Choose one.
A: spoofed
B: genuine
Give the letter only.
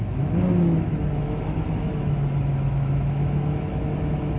A